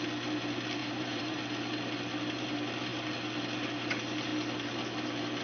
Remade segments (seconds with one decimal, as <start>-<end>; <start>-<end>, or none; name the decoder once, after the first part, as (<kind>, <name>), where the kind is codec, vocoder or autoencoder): 0.8-1.4 (vocoder, BigVGAN v2)

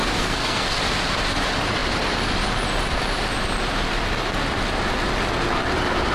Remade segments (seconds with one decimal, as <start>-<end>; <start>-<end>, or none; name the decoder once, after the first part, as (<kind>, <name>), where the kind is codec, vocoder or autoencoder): 0.0-0.8 (codec, SNAC)

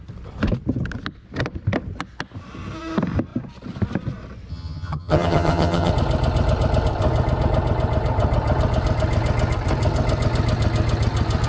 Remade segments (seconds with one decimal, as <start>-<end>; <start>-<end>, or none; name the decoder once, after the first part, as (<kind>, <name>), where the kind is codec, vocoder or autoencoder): 4.5-5.9 (vocoder, HiFi-GAN)